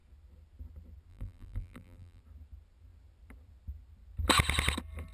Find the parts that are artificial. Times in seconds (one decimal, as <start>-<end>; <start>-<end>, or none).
1.1-2.2